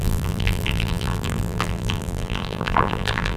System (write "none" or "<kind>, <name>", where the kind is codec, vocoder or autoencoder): vocoder, BigVGAN v2